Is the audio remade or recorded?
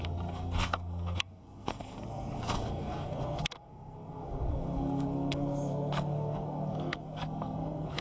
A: remade